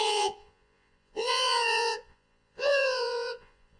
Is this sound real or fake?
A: fake